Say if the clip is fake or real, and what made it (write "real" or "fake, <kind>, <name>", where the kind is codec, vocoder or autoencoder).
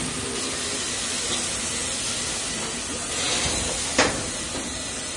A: real